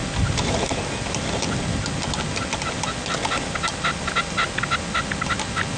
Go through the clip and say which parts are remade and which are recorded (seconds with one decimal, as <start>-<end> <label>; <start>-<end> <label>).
0.0-5.8 recorded